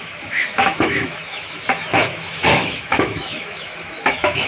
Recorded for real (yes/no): no